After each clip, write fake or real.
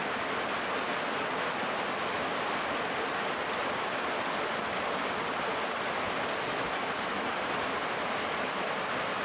real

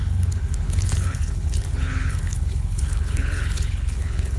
fake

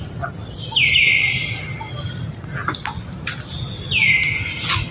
real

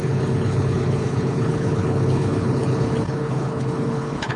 fake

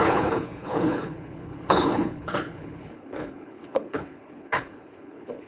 fake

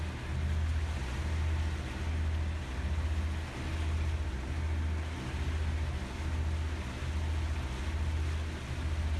real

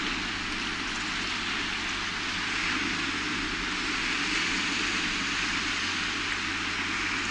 real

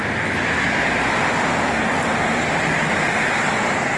real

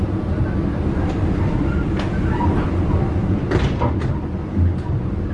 real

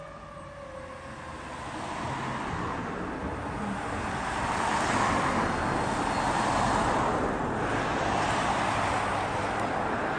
real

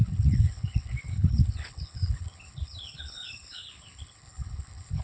fake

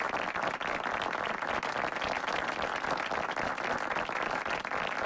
real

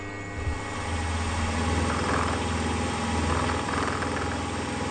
real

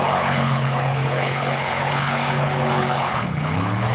fake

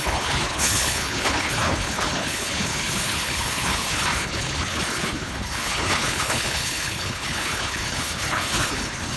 fake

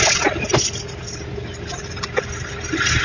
real